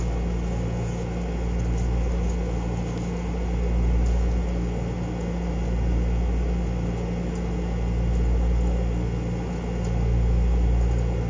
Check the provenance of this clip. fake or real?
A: real